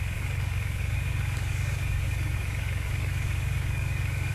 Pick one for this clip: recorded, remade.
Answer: remade